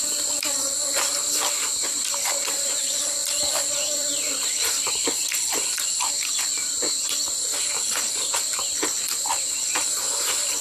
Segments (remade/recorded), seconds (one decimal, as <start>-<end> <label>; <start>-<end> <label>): 0.0-10.6 recorded